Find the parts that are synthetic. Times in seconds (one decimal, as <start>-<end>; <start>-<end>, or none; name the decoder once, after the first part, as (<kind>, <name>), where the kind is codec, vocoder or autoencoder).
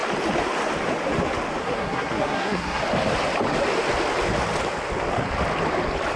1.6-2.8 (codec, SNAC)